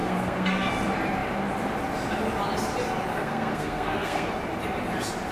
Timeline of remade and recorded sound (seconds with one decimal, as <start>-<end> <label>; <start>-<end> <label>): 0.0-0.7 remade; 0.7-3.1 recorded; 3.1-4.3 remade; 4.3-5.3 recorded